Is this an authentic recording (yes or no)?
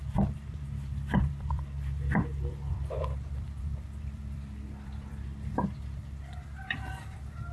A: no